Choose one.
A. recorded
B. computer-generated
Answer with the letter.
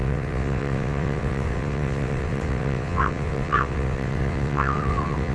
B